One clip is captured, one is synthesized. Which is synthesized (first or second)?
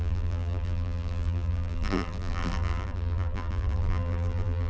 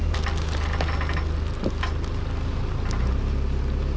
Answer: first